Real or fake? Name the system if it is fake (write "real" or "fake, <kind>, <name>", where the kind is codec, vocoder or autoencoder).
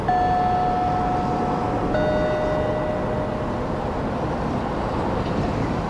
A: real